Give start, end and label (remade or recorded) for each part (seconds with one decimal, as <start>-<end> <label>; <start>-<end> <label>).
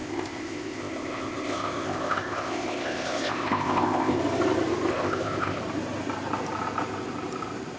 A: 0.0-4.2 remade; 4.2-4.9 recorded; 4.9-5.6 remade; 5.6-7.8 recorded